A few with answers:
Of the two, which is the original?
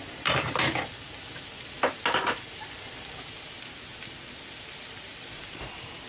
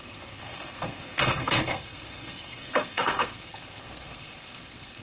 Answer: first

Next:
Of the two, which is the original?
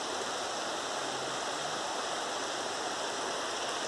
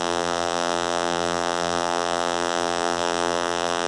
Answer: first